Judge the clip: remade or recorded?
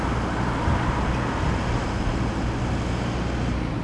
recorded